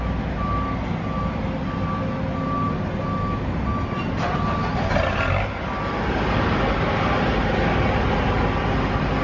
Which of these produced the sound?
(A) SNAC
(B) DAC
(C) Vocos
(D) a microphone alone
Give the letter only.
D